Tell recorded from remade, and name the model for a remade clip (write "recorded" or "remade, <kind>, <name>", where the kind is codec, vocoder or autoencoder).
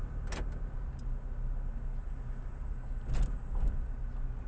recorded